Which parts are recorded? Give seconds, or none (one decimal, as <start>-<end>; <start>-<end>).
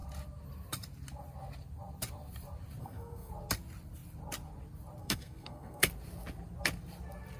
0.0-2.8; 3.3-5.0; 5.9-7.4